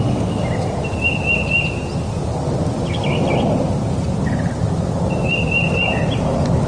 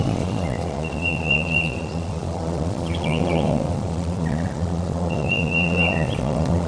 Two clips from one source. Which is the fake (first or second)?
second